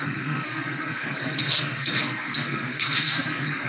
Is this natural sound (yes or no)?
no